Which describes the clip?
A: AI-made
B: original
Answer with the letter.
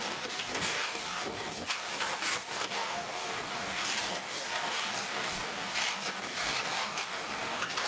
A